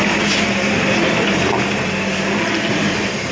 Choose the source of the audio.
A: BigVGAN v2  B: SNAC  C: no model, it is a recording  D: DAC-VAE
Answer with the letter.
C